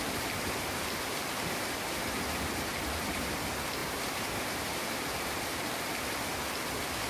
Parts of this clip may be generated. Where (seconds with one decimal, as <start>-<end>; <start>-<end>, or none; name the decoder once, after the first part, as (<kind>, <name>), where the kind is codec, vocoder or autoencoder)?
2.7-3.4 (vocoder, BigVGAN v2); 3.8-5.6